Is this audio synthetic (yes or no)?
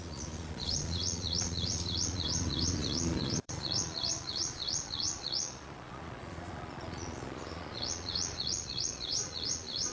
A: yes